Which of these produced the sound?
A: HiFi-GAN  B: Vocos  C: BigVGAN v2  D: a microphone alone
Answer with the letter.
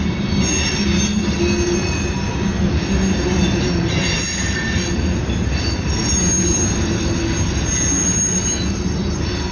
D